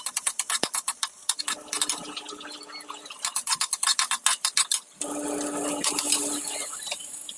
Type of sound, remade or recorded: recorded